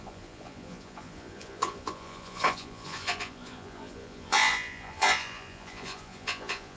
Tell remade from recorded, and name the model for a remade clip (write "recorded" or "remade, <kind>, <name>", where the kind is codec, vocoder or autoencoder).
remade, vocoder, Vocos